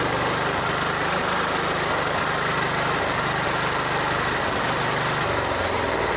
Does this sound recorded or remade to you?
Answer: recorded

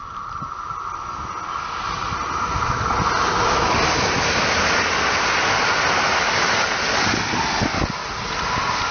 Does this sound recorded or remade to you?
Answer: recorded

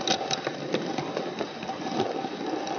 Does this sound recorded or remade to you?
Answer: recorded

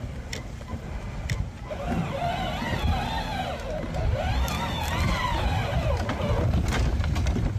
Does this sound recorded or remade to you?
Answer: recorded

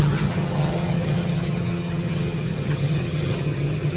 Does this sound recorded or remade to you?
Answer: remade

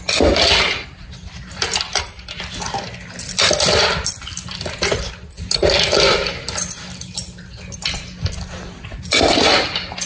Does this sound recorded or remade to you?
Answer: recorded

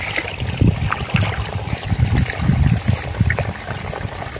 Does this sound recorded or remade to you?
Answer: recorded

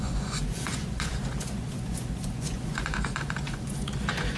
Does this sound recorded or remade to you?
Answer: remade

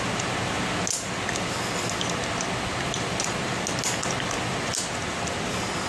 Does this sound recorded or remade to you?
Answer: recorded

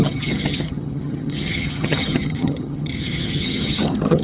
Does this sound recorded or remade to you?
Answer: remade